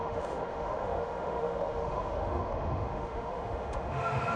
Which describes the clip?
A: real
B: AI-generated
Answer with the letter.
B